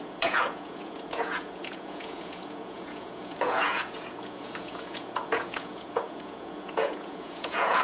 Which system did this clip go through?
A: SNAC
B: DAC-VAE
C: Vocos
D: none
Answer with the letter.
C